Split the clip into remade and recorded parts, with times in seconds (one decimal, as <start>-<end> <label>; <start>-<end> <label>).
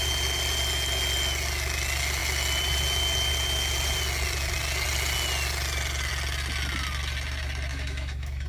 0.0-7.7 recorded; 7.7-8.5 remade